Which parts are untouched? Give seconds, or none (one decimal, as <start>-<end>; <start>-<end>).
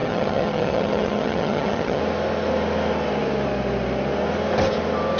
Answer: 2.0-5.2